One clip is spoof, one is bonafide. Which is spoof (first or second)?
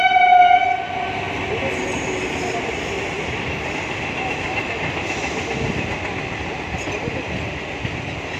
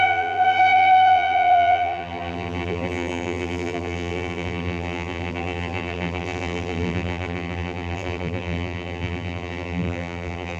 second